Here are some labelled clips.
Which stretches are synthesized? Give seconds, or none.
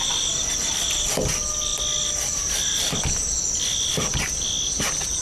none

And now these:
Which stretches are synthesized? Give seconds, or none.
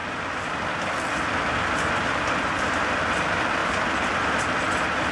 none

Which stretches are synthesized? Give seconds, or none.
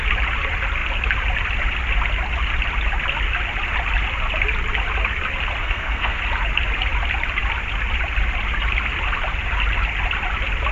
5.6-6.2 (codec, SNAC)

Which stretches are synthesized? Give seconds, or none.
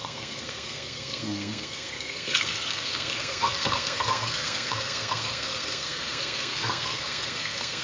0.0-7.8 (codec, SNAC)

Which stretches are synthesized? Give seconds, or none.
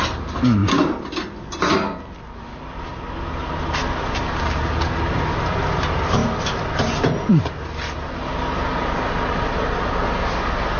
none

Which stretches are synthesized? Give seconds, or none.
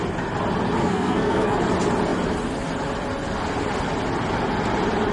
0.8-1.6 (codec, SNAC)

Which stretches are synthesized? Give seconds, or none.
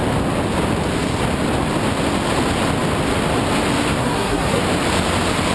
4.0-4.6 (codec, SNAC)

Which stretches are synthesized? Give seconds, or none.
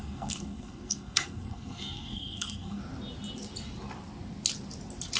0.0-2.8 (codec, SNAC)